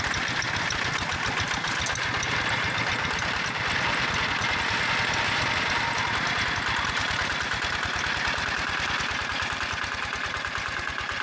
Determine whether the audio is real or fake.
real